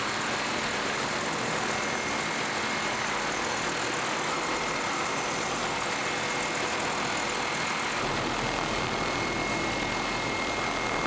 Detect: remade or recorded recorded